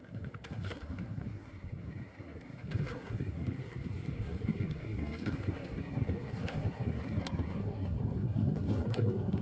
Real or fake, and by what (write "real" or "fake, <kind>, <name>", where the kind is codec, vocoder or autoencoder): fake, codec, SNAC